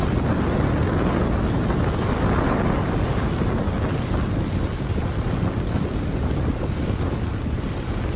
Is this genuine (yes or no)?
yes